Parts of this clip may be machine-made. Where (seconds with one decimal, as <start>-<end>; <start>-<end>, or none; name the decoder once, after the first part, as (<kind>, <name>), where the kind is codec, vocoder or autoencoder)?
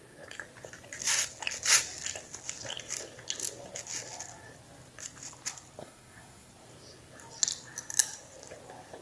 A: 5.8-6.5 (codec, SNAC)